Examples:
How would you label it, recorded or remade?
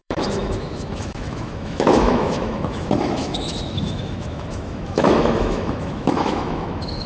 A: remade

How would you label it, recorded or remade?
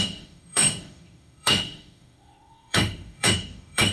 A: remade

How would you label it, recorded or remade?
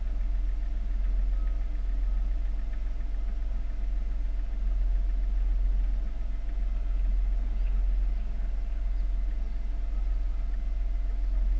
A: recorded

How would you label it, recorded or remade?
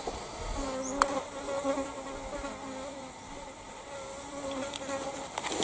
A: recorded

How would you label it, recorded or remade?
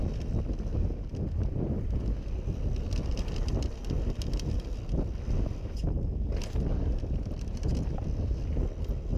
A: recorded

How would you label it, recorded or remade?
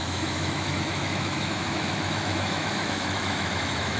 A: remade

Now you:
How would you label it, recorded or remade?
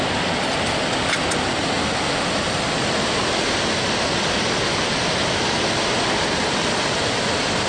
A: recorded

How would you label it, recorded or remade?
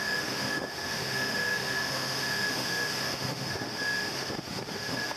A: remade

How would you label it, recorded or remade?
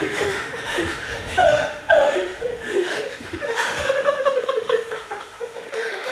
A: remade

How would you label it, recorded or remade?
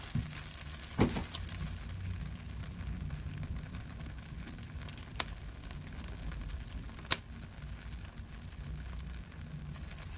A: recorded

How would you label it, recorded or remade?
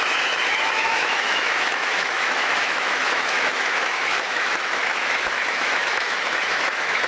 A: remade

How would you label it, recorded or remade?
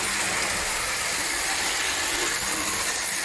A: recorded